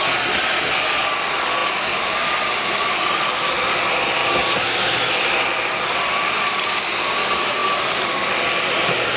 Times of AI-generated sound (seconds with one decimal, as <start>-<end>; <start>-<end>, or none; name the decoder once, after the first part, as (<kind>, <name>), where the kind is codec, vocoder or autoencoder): 4.2-5.1 (codec, DAC)